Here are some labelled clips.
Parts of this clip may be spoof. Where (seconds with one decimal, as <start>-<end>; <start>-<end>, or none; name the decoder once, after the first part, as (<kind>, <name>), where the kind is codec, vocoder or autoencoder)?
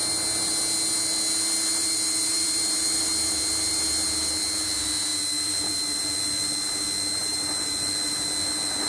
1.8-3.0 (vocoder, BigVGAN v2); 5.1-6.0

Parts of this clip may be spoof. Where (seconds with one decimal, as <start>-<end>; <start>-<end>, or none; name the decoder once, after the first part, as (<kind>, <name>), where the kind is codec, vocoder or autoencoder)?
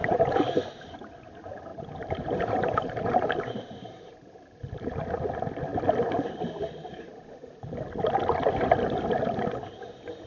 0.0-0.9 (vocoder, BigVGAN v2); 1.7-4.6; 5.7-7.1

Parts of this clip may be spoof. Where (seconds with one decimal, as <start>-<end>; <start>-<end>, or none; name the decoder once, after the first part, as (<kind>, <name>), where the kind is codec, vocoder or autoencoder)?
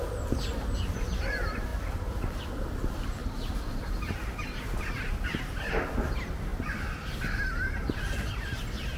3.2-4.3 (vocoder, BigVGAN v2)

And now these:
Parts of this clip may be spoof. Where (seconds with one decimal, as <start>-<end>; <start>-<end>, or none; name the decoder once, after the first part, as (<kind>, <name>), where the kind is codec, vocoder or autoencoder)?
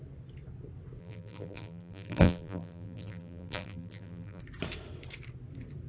1.0-4.4 (vocoder, BigVGAN v2)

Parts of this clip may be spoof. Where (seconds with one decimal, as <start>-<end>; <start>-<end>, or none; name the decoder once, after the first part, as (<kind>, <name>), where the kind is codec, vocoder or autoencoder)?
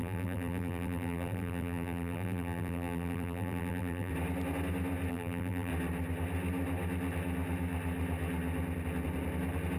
0.0-4.1 (vocoder, BigVGAN v2); 5.1-5.7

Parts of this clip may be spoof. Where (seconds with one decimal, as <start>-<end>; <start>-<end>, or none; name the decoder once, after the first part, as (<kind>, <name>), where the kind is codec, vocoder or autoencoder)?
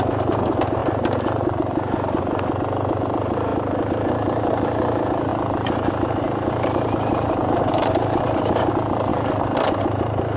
0.8-2.2 (vocoder, BigVGAN v2); 5.3-8.7